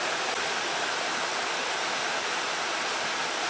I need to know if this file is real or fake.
real